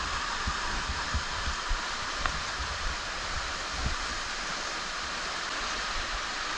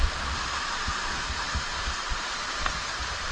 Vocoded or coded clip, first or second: first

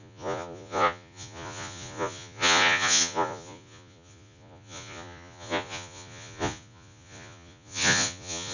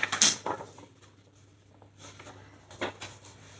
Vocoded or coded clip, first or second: first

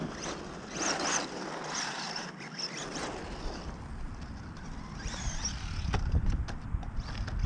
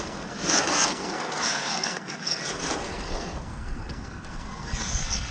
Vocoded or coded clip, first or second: second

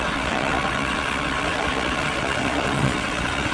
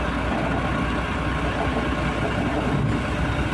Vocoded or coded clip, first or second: first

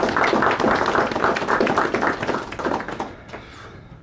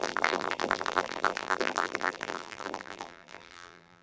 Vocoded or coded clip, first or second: second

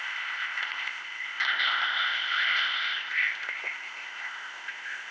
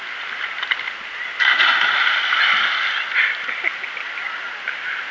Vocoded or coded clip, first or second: first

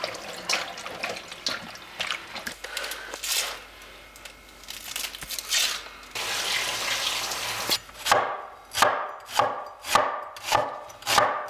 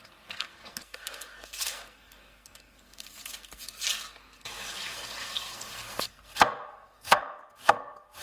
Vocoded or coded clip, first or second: second